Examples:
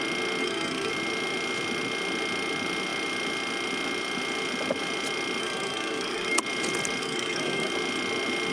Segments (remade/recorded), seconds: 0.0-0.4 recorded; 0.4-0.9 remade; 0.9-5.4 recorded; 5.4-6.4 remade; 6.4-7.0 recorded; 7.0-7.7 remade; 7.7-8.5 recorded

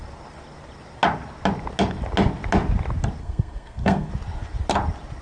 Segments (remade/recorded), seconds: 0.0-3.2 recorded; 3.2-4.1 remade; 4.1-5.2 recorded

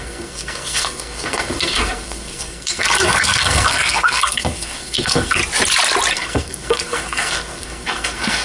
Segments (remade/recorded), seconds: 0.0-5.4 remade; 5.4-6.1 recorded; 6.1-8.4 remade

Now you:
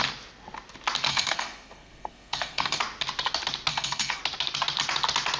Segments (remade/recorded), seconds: 0.0-1.1 recorded; 1.1-2.8 remade; 2.8-3.7 recorded; 3.7-4.2 remade; 4.2-5.4 recorded